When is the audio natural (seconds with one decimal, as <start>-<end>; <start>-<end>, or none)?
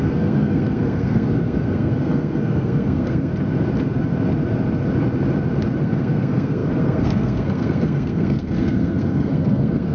3.3-5.8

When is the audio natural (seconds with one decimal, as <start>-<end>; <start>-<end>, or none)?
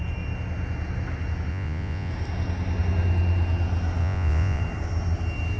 0.0-1.5; 2.1-4.0; 4.6-5.6